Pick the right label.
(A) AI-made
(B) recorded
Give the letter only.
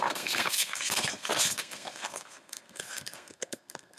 A